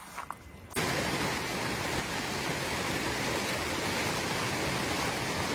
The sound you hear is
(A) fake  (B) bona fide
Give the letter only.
B